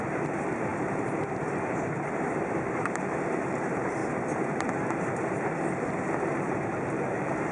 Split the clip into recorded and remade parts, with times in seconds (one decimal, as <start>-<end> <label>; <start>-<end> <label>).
0.0-0.7 remade; 0.7-2.6 recorded; 2.6-4.0 remade; 4.0-6.1 recorded; 6.1-7.5 remade